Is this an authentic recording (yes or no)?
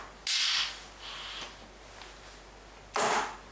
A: yes